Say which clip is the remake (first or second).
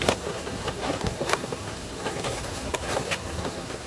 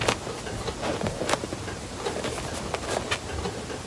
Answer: first